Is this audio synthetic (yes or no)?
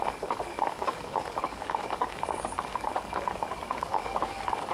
yes